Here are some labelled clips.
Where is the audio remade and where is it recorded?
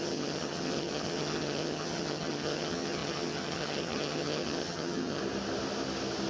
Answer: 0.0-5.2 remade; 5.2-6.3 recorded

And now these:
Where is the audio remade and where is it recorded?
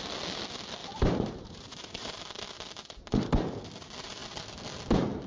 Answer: 0.0-0.8 recorded; 0.8-2.2 remade; 2.2-5.3 recorded